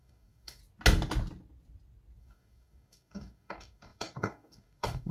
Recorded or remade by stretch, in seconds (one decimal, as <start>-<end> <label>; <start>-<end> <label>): 0.0-0.6 remade; 0.6-2.2 recorded; 2.2-5.1 remade